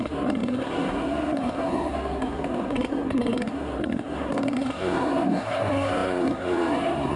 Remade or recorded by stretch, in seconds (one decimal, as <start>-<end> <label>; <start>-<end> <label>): 0.0-7.2 remade